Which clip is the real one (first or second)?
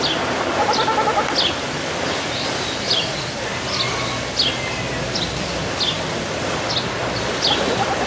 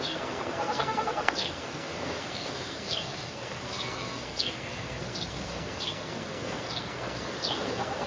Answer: first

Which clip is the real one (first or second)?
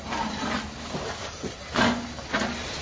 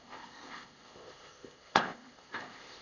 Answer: first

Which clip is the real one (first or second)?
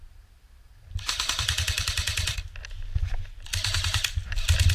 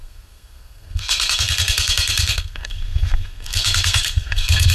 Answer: first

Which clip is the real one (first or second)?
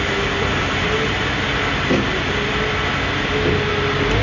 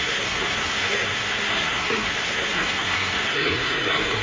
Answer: first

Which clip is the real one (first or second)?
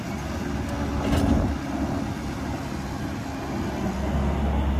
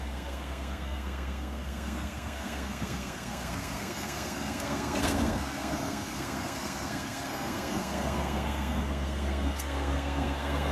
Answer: first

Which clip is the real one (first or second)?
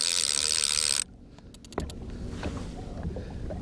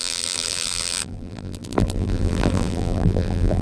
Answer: first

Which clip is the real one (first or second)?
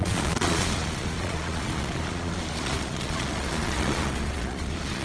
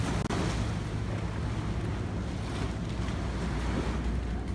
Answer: second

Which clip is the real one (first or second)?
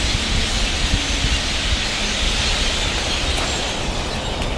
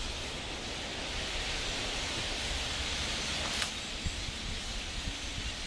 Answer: first